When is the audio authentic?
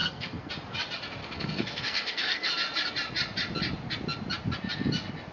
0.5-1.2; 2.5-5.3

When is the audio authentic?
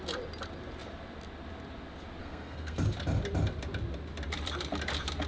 0.0-2.2; 2.8-5.3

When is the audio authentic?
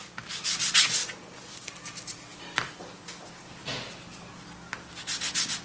0.0-5.6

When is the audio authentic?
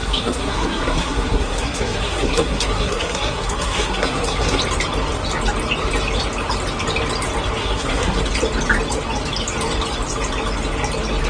4.6-7.6; 8.2-11.3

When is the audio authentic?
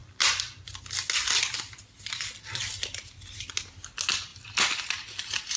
0.0-5.6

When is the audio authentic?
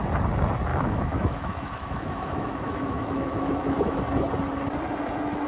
0.0-0.7; 4.0-5.5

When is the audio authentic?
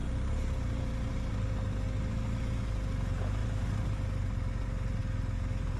0.0-5.8